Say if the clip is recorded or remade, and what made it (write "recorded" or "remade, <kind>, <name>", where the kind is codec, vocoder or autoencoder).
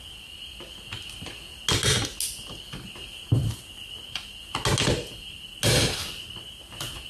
recorded